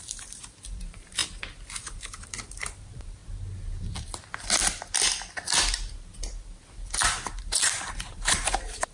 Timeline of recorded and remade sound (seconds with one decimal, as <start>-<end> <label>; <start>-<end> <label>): 0.0-1.2 remade; 1.2-1.8 recorded; 1.8-3.2 remade; 3.2-7.4 recorded; 7.4-8.9 remade